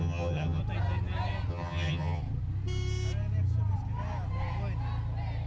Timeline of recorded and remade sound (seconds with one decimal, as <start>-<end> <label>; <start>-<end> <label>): 0.0-0.6 remade; 0.6-1.5 recorded; 1.5-2.2 remade; 2.2-5.5 recorded